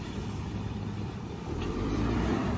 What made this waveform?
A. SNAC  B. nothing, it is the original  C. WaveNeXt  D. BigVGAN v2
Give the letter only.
D